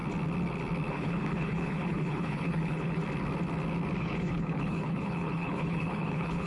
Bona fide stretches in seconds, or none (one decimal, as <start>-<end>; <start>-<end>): 0.0-0.9; 3.0-4.0